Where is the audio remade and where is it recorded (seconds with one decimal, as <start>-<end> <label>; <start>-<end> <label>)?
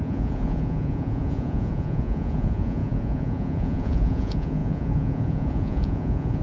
0.0-6.4 remade